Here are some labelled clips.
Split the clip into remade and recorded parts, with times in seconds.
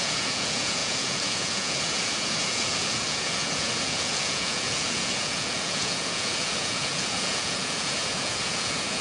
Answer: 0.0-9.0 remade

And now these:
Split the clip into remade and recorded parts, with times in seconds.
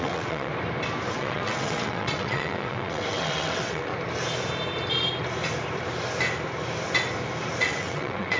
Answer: 0.0-0.5 remade; 0.5-1.1 recorded; 1.1-3.9 remade; 3.9-7.6 recorded; 7.6-8.4 remade